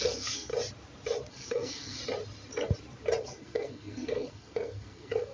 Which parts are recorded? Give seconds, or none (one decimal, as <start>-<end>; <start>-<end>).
0.5-1.3; 2.0-3.2